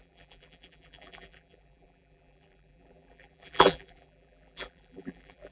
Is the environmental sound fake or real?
fake